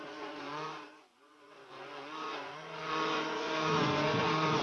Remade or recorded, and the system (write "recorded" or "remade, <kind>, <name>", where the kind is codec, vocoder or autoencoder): remade, vocoder, Vocos